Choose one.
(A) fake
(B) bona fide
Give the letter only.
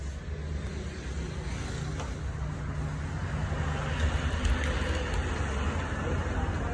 B